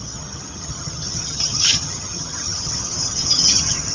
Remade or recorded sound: remade